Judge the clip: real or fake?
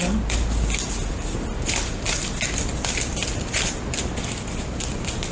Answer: real